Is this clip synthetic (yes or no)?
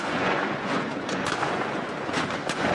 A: yes